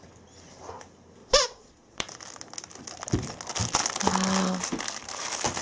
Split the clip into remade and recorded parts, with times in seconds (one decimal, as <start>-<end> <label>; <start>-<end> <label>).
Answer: 0.0-1.2 recorded; 1.2-2.2 remade; 2.2-5.6 recorded